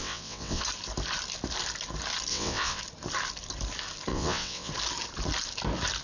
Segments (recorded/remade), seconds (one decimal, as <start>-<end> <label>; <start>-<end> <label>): 0.0-0.6 remade; 0.6-2.3 recorded; 2.3-2.8 remade; 2.8-4.1 recorded; 4.1-4.7 remade; 4.7-6.0 recorded